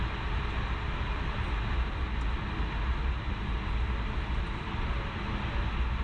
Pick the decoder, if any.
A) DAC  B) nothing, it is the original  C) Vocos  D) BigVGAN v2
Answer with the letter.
B